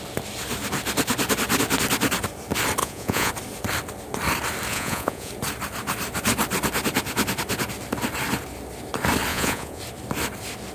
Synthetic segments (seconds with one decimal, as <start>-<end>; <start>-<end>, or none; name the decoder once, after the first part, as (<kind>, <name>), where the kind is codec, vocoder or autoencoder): 2.8-3.3 (vocoder, Vocos); 4.7-5.3; 9.3-9.8